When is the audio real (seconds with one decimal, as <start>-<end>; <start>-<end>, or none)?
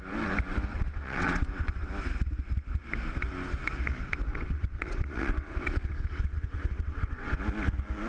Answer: 0.0-0.7; 1.9-4.3; 7.4-8.1